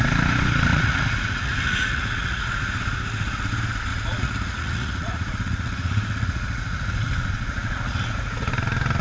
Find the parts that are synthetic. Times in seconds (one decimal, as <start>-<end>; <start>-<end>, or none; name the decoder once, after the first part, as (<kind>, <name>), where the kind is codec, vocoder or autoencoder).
0.7-3.5 (vocoder, Vocos); 3.9-8.5